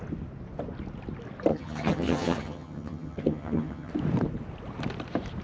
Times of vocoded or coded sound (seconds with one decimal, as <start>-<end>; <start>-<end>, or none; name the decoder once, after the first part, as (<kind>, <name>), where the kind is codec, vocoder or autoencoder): 1.5-3.9 (vocoder, HiFi-GAN)